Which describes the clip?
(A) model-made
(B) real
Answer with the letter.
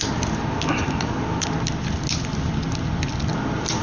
B